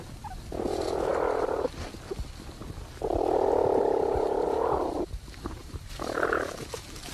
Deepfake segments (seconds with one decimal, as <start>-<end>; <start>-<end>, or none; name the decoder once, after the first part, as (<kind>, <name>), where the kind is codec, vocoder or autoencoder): 5.6-7.1 (vocoder, BigVGAN v2)